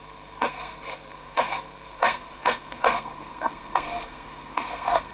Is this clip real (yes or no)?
no